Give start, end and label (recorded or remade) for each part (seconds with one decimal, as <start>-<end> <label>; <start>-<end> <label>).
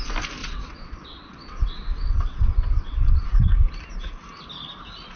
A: 0.0-0.4 recorded; 0.4-3.5 remade; 3.5-5.2 recorded